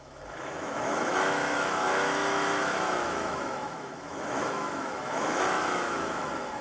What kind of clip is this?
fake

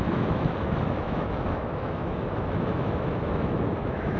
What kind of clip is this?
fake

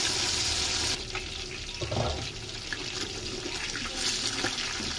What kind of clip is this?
real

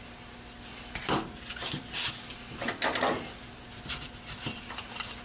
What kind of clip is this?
real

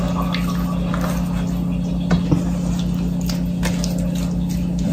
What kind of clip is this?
real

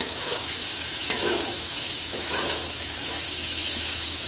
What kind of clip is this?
fake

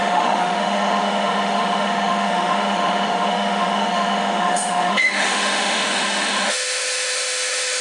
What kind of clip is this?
fake